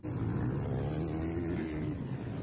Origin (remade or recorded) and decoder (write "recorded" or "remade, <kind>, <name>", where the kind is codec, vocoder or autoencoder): recorded